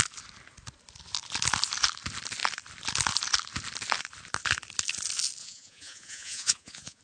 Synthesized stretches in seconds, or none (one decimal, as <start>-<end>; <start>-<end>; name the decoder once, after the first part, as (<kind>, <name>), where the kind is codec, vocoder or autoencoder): 5.4-7.0 (vocoder, Vocos)

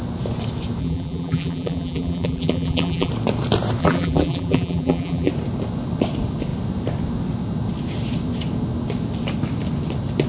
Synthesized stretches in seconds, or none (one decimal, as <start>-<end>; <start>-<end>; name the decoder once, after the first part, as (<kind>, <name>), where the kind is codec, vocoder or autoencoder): 0.8-3.1 (vocoder, BigVGAN v2); 3.8-5.3

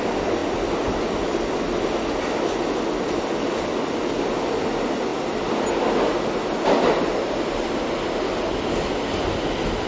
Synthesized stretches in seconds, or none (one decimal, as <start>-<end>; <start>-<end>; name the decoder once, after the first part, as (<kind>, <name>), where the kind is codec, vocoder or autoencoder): none

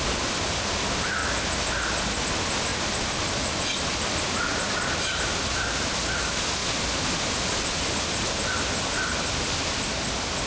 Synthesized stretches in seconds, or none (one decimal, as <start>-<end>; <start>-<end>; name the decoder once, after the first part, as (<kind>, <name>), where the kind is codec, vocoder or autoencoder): 2.7-3.7 (vocoder, BigVGAN v2)

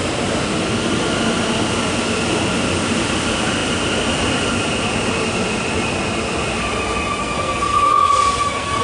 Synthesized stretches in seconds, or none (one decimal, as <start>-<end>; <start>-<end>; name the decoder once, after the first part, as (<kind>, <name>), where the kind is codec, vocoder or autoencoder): 7.2-8.8 (codec, SNAC)

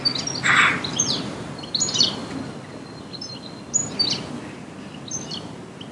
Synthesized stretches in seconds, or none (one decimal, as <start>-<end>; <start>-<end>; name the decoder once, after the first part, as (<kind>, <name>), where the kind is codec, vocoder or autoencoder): 0.7-2.2 (vocoder, BigVGAN v2)

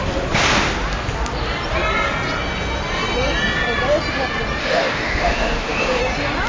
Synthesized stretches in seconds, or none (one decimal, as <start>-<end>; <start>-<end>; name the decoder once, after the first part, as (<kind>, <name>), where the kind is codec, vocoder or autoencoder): 4.6-6.0 (autoencoder, DAC-VAE)